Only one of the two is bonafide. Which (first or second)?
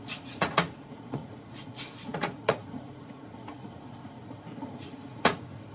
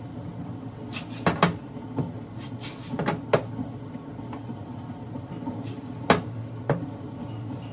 second